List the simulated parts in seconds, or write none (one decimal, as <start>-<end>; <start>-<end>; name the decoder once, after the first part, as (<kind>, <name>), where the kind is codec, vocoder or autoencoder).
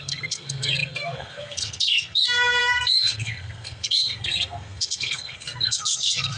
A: 0.0-6.4 (codec, SNAC)